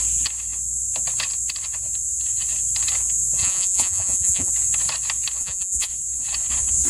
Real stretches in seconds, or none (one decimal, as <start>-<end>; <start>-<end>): 0.0-3.4; 4.5-5.4; 5.9-6.9